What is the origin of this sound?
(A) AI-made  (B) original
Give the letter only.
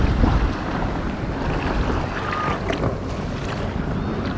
B